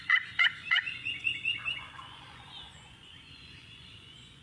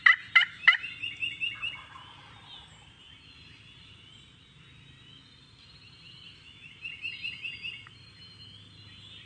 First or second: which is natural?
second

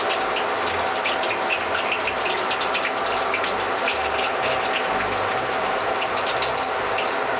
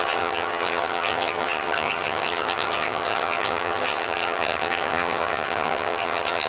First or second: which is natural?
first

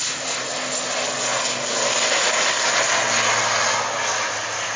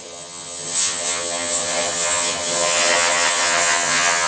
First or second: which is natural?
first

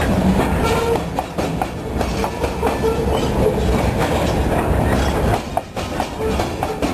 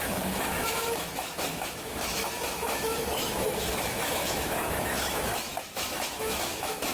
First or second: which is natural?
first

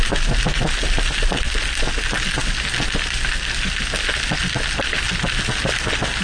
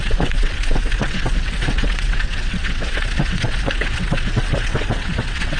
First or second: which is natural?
first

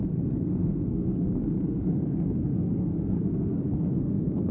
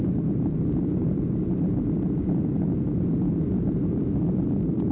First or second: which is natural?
second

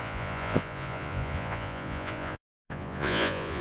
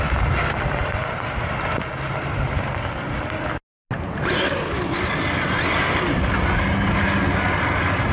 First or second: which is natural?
second